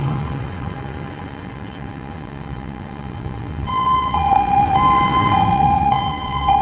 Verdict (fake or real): fake